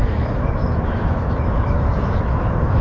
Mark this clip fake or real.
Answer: fake